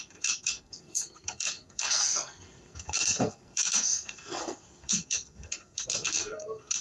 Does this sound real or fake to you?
fake